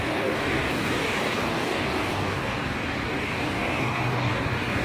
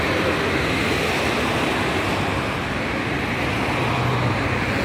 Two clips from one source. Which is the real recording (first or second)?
second